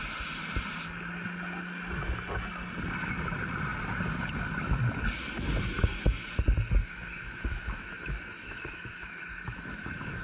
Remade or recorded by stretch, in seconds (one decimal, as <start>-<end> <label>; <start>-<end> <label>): 0.0-6.8 recorded; 6.8-10.2 remade